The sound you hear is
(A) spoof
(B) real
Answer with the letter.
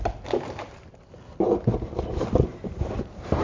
B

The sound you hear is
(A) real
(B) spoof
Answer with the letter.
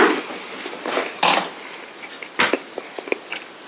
B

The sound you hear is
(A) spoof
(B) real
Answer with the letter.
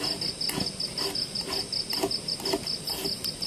B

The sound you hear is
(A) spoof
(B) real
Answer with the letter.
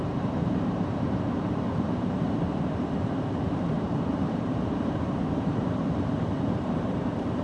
A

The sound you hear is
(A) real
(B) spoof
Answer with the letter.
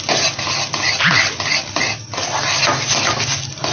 A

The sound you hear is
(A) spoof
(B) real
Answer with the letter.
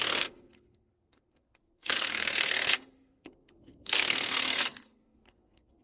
A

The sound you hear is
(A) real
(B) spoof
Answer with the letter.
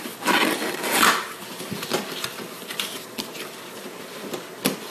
B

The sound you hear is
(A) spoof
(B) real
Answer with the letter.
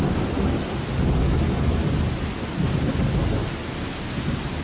B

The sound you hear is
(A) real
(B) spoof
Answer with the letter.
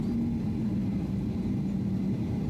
A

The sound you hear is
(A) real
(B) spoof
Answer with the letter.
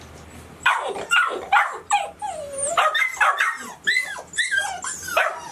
B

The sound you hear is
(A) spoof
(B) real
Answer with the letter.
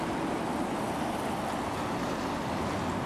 B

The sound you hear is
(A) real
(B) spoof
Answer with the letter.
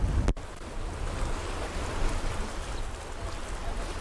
A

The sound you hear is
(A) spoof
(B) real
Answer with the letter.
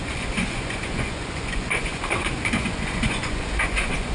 A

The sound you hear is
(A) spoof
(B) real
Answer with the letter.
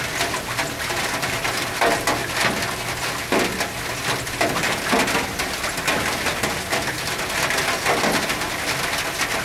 B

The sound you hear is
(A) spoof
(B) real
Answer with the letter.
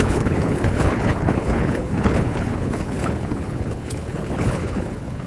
A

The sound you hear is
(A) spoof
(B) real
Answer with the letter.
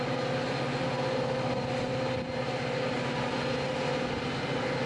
B